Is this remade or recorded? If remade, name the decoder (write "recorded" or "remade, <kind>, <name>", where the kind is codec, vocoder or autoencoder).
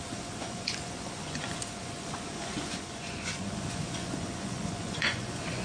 remade, vocoder, Vocos